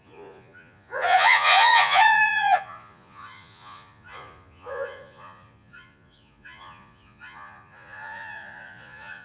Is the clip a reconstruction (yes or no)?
yes